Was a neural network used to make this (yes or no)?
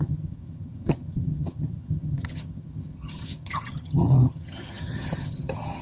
yes